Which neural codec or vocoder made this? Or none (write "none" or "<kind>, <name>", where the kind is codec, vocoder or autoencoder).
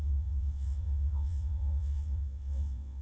vocoder, WaveNeXt